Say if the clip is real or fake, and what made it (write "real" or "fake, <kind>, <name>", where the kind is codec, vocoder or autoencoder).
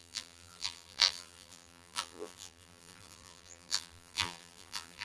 fake, vocoder, BigVGAN v2